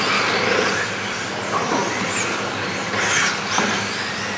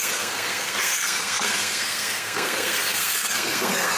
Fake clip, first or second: second